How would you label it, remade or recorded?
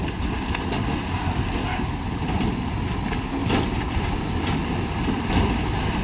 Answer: recorded